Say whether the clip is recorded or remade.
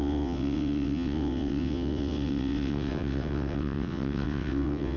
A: remade